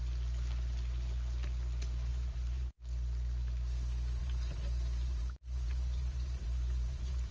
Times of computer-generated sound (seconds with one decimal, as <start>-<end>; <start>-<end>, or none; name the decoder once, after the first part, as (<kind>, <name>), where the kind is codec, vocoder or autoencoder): 2.1-2.7 (vocoder, BigVGAN v2); 4.2-7.3